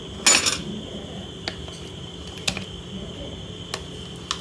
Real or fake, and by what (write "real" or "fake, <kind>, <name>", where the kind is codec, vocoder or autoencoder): real